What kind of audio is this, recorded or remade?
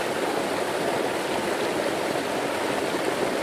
recorded